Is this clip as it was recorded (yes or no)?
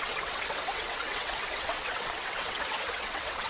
no